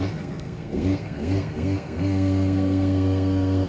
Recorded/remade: remade